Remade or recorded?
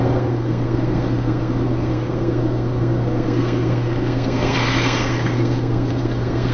remade